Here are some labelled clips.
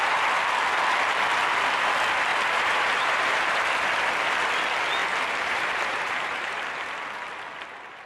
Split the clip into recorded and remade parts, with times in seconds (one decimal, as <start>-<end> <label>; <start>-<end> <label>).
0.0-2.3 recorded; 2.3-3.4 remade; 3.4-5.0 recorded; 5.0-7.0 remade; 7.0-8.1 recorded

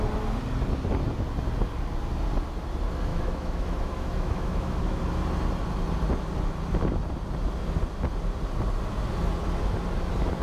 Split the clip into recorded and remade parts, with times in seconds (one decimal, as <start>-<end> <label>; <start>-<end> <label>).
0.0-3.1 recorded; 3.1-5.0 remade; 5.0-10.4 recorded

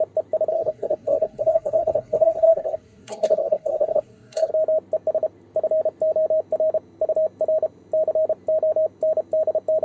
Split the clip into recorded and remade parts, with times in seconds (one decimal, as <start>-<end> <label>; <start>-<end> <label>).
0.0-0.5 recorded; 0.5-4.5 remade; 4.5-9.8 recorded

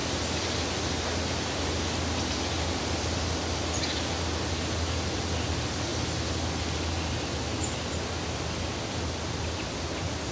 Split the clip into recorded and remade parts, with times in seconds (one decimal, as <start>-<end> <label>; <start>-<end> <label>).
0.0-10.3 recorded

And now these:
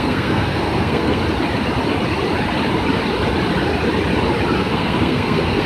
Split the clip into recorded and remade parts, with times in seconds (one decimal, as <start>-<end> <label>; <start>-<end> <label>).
0.0-1.2 remade; 1.2-4.6 recorded; 4.6-5.7 remade

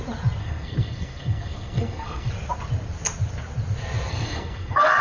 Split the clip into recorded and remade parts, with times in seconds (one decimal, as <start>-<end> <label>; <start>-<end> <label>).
0.0-0.4 recorded; 0.4-2.3 remade; 2.3-4.1 recorded; 4.1-5.0 remade

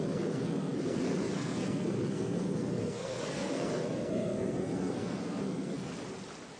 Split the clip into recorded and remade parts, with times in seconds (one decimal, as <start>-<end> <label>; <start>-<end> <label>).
0.0-5.9 remade; 5.9-6.6 recorded

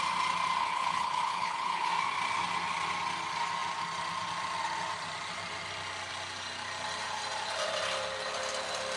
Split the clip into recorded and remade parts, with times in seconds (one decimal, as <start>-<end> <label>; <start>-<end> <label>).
0.0-0.6 recorded; 0.6-1.9 remade; 1.9-9.0 recorded